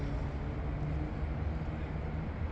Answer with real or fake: real